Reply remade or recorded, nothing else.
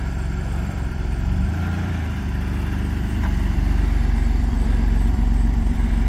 remade